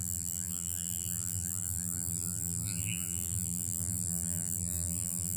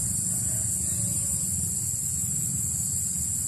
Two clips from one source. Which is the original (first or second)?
second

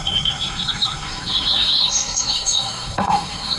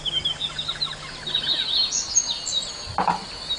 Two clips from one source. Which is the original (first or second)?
second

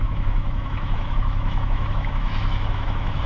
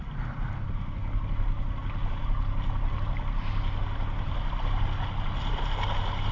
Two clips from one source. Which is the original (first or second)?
second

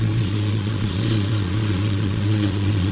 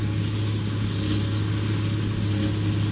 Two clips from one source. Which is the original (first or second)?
second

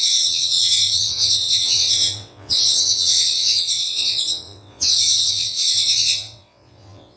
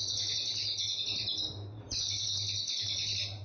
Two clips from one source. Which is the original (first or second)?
second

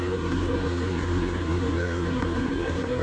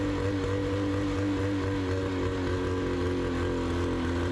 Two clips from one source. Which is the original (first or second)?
second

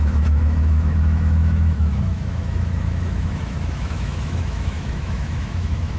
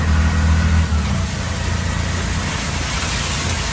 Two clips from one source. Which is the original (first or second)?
second